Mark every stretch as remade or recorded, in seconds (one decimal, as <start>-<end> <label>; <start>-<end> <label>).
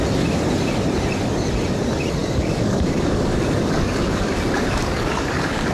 0.0-2.2 recorded; 2.2-5.7 remade